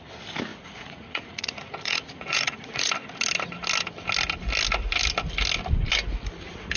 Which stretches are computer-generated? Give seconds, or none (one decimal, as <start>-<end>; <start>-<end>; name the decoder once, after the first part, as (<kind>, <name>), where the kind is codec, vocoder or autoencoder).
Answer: 0.5-2.9 (vocoder, Vocos)

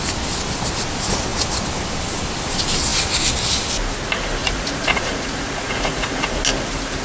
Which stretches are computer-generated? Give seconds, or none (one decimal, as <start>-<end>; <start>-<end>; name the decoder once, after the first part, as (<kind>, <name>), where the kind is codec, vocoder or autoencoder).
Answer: 4.4-6.4 (vocoder, Vocos)

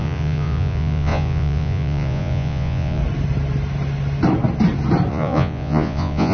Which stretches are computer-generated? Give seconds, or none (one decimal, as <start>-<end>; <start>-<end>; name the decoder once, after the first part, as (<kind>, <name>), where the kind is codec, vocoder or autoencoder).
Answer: 0.0-3.0 (vocoder, Vocos); 5.1-6.3

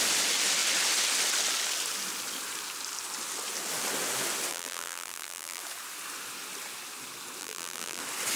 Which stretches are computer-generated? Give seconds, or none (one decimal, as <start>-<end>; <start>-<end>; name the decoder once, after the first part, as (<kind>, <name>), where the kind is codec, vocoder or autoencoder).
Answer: 4.5-5.6 (vocoder, BigVGAN v2); 7.4-8.0

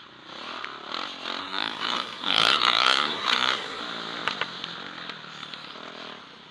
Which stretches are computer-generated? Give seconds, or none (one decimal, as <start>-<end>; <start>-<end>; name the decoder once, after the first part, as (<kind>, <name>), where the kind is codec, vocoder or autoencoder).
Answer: 1.4-3.8 (codec, SNAC)

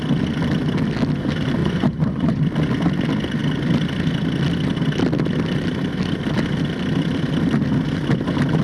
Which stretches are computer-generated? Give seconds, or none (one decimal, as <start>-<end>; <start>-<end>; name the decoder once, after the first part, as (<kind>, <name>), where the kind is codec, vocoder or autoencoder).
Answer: 1.6-2.4 (vocoder, Vocos)

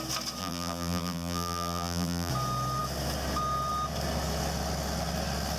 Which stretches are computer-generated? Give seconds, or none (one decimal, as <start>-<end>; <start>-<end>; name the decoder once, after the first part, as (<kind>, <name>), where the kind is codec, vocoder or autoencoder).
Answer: 0.4-2.3 (vocoder, BigVGAN v2)